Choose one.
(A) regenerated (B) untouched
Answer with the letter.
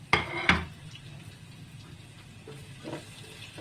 B